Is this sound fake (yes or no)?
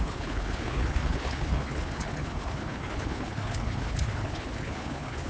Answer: yes